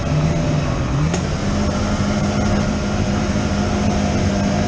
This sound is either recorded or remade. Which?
recorded